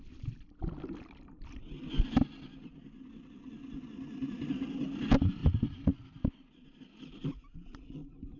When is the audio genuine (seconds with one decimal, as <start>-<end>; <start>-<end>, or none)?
0.0-4.2; 5.0-5.4; 6.8-8.4